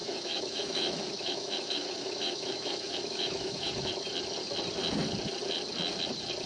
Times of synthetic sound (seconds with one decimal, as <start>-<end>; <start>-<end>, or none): 0.0-3.9